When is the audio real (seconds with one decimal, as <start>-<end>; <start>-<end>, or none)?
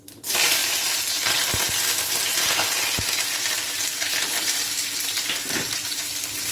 0.0-0.6; 1.6-2.2; 6.1-6.5